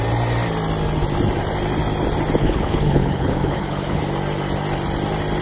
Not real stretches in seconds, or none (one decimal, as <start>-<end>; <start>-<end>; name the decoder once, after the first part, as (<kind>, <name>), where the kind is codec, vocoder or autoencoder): 2.4-4.0 (codec, HILCodec)